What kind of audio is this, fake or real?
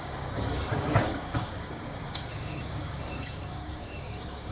fake